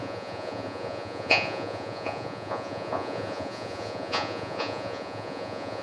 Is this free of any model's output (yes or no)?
no